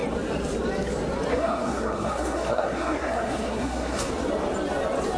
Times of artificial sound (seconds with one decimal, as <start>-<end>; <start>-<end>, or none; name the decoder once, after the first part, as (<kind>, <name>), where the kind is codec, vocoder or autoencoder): 1.3-4.1 (codec, SNAC)